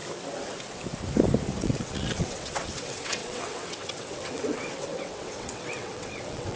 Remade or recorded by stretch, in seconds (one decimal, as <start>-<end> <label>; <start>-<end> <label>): 0.0-1.6 recorded; 1.6-6.6 remade